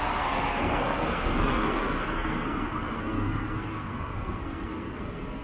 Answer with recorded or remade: remade